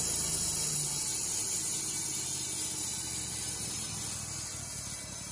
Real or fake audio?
real